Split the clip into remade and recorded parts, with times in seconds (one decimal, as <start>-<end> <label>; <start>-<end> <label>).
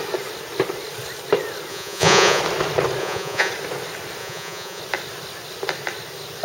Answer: 0.0-1.7 recorded; 1.7-2.4 remade; 2.4-3.0 recorded; 3.0-3.5 remade; 3.5-4.2 recorded; 4.2-4.8 remade; 4.8-6.4 recorded